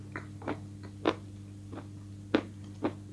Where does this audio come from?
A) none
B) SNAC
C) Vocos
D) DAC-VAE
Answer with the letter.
A